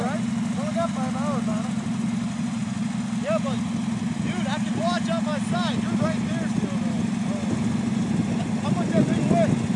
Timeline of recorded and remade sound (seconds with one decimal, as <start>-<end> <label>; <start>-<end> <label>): 0.0-9.8 recorded